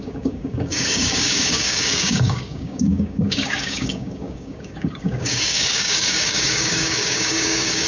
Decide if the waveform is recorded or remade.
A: remade